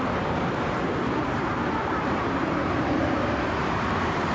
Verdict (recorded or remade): remade